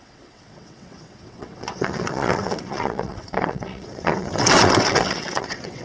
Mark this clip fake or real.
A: fake